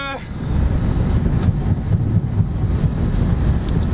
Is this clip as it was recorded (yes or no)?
yes